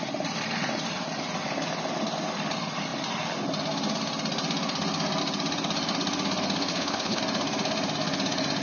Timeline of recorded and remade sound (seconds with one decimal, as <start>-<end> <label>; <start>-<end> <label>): 0.0-6.7 recorded; 6.7-7.2 remade; 7.2-8.6 recorded